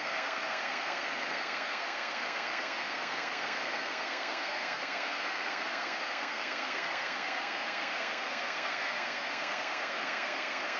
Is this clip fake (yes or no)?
yes